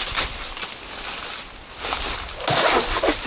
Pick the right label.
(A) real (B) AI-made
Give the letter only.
A